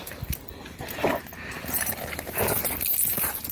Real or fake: real